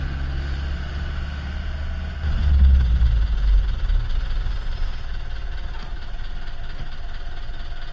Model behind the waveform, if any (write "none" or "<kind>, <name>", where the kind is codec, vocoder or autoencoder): none